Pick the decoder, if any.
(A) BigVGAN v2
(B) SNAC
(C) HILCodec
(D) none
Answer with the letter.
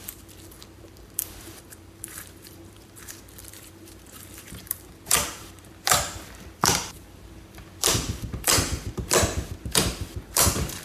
A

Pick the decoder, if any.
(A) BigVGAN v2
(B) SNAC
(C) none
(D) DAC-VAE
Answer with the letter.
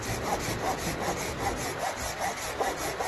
C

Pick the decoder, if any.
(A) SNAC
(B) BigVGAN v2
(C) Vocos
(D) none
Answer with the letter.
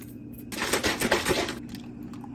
D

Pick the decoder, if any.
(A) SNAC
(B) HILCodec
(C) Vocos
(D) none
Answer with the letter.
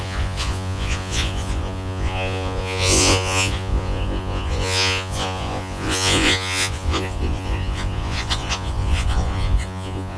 C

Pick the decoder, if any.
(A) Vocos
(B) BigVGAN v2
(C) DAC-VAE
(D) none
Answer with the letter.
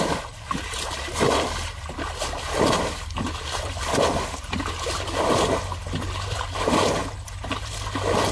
D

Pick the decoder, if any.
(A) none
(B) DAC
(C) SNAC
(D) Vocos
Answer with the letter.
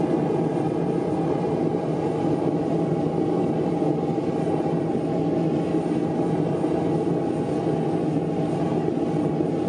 A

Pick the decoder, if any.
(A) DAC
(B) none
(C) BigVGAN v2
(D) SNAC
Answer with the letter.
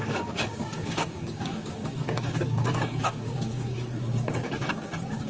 A